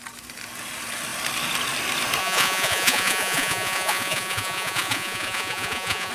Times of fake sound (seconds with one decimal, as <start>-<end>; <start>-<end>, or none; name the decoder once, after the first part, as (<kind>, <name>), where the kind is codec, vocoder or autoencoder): 2.2-6.1 (vocoder, Vocos)